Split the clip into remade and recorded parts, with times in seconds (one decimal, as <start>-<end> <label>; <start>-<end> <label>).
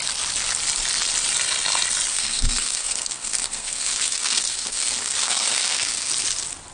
0.0-2.1 recorded; 2.1-6.1 remade; 6.1-6.7 recorded